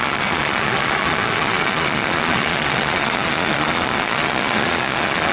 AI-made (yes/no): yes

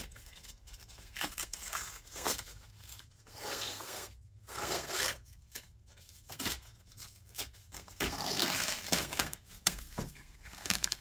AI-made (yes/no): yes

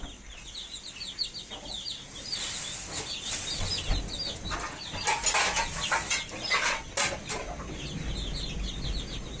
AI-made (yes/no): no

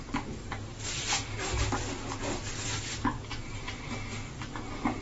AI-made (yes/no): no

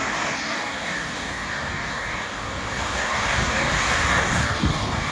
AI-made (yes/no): yes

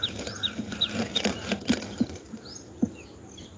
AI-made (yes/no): yes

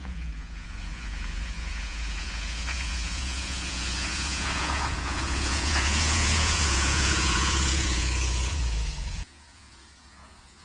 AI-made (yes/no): yes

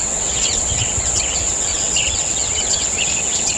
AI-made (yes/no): yes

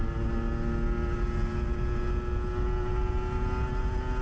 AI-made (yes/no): no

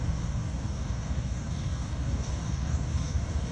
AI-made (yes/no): yes